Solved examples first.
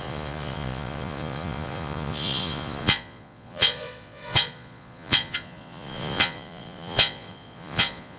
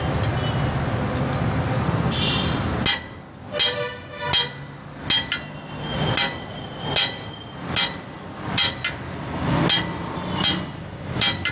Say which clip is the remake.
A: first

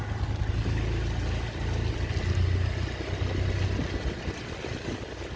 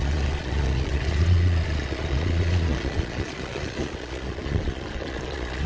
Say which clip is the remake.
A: second